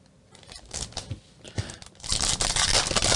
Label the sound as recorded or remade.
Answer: recorded